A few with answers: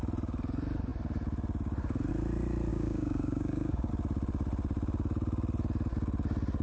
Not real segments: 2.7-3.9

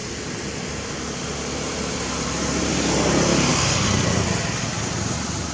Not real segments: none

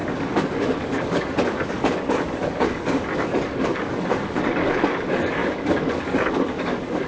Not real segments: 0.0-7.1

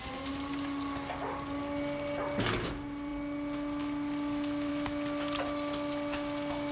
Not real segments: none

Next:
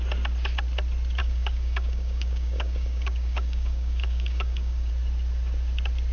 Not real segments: 1.2-4.9

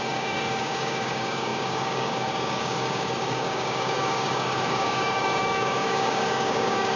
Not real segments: 0.0-7.0

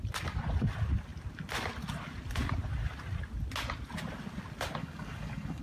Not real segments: 4.8-5.6